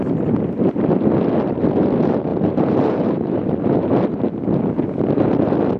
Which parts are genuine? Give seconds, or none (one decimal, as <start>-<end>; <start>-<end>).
0.0-2.3; 3.5-5.8